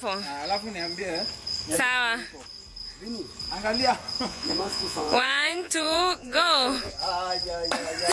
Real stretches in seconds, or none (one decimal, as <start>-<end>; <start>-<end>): 0.0-4.3; 6.9-8.1